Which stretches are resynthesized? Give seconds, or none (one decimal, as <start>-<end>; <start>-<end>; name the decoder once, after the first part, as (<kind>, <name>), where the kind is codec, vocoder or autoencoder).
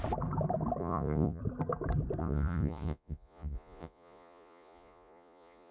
0.8-1.4 (vocoder, Vocos); 2.2-5.7